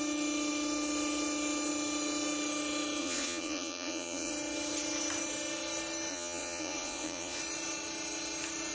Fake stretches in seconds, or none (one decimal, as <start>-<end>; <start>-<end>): 3.0-4.3; 6.1-7.4